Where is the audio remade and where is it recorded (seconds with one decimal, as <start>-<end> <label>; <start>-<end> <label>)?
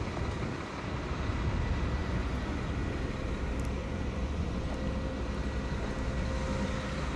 0.0-2.0 recorded; 2.0-2.7 remade; 2.7-3.8 recorded; 3.8-4.7 remade; 4.7-7.2 recorded